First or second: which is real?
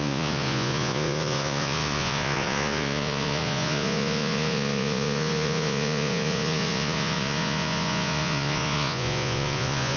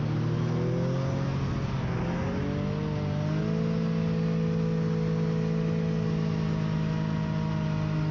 second